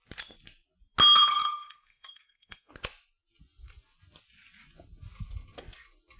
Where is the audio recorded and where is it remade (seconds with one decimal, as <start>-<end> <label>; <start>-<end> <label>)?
0.0-1.3 recorded; 1.3-2.7 remade; 2.7-6.2 recorded